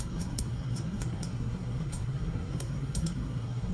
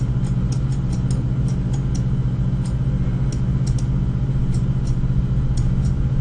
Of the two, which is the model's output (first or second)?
first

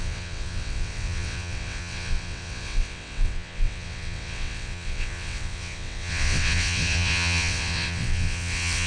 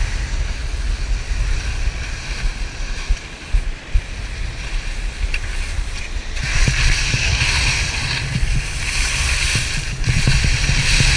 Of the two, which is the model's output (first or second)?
first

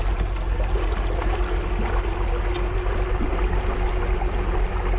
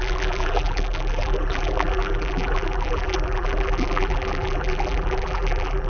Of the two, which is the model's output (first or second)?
second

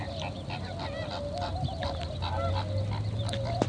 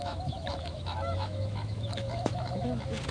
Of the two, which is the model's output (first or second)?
second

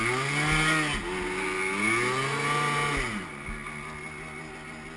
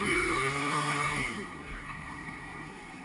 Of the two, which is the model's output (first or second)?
second